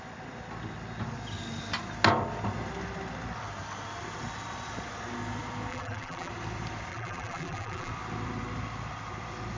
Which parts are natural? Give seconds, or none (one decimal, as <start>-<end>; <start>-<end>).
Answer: 0.0-5.7; 6.3-6.9; 7.9-9.6